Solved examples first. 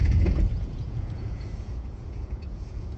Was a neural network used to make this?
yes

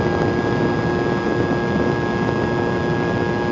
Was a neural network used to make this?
no